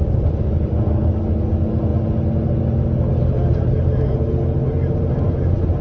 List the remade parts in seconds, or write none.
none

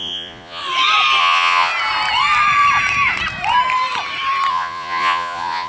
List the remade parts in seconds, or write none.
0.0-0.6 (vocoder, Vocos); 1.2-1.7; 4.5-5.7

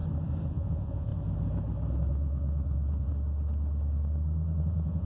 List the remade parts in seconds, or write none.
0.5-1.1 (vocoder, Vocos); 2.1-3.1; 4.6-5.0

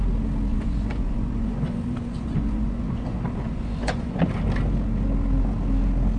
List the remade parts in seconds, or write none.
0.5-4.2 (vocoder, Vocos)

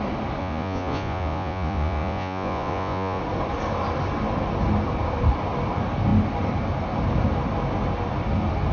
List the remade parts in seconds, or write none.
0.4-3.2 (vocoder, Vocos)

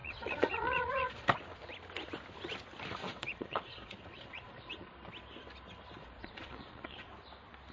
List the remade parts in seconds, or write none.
0.0-1.3 (vocoder, Vocos); 3.0-4.9; 6.0-7.1

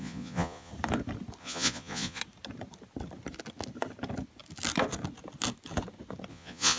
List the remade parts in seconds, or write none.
0.0-0.7 (vocoder, Vocos); 1.4-2.2; 6.3-6.8